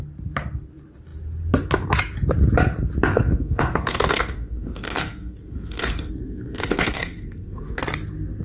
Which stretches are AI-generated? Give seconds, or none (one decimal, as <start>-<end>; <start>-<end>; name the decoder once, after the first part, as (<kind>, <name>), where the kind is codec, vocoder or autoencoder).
3.1-7.8 (codec, SNAC)